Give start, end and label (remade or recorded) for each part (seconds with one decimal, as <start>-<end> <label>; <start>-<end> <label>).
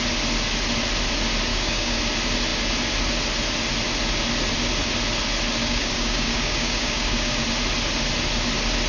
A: 0.0-1.5 recorded; 1.5-2.0 remade; 2.0-5.6 recorded; 5.6-7.4 remade; 7.4-8.9 recorded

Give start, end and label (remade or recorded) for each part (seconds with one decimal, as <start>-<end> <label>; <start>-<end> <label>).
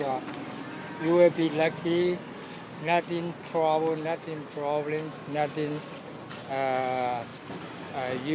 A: 0.0-1.0 recorded; 1.0-3.0 remade; 3.0-8.3 recorded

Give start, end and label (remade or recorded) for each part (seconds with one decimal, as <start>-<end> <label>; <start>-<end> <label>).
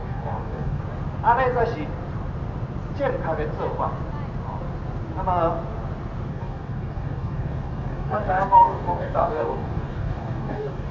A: 0.0-0.8 remade; 0.8-6.3 recorded; 6.3-10.9 remade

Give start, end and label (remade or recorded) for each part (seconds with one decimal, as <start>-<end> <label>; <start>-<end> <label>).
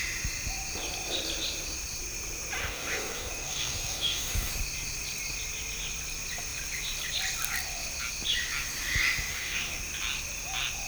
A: 0.0-2.6 recorded; 2.6-4.5 remade; 4.5-9.3 recorded; 9.3-9.8 remade; 9.8-10.9 recorded